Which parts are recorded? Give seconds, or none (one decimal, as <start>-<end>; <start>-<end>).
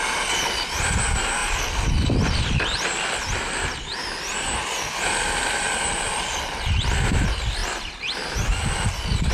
0.0-9.3